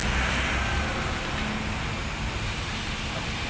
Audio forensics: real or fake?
real